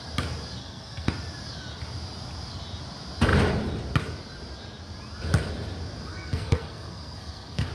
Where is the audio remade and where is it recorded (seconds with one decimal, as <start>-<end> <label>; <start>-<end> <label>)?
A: 0.0-0.6 recorded; 0.6-1.1 remade; 1.1-6.1 recorded; 6.1-7.7 remade